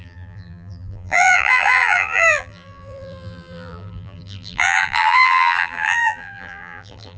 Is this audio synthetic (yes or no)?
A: yes